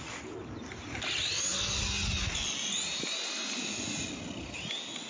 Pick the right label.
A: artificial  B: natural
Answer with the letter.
B